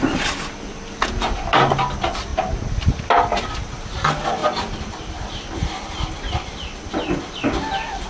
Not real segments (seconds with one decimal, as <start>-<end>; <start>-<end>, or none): none